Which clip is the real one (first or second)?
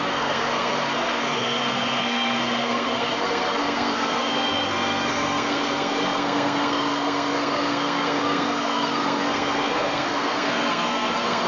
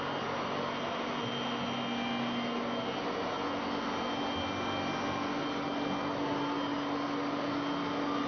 second